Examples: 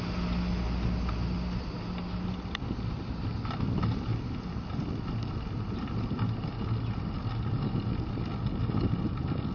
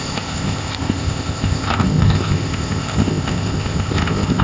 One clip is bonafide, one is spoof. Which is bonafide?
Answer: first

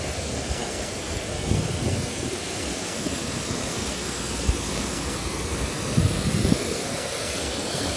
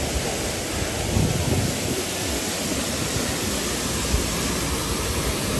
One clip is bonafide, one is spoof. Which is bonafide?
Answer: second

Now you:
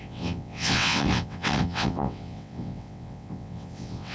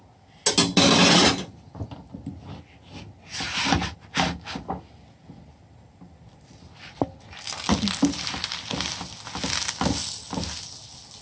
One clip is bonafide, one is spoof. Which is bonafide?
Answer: second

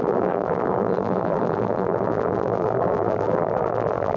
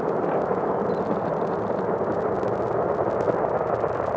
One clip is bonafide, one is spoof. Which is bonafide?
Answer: second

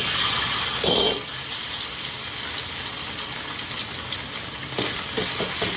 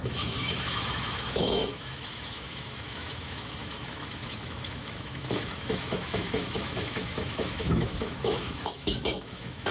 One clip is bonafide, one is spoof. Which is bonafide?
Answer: first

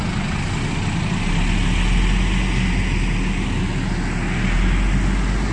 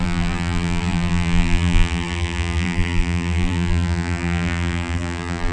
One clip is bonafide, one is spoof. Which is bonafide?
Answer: first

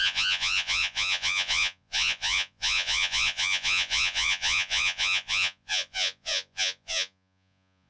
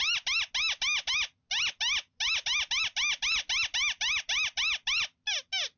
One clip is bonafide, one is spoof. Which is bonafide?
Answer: second